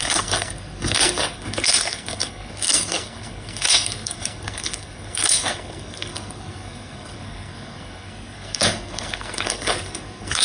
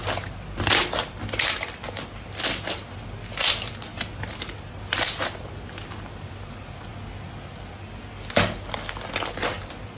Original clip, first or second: second